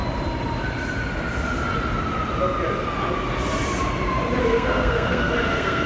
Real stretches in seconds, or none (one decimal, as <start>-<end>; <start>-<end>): 0.0-4.4